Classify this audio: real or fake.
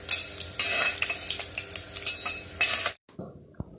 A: real